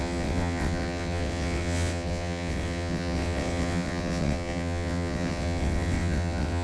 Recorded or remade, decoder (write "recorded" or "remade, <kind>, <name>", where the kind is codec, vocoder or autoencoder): remade, vocoder, WaveNeXt